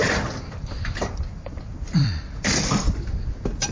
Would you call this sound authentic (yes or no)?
no